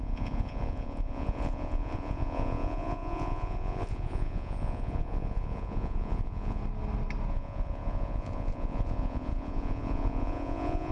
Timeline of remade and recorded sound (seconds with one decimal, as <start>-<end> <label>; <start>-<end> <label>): 0.0-6.6 remade; 6.6-7.3 recorded; 7.3-10.9 remade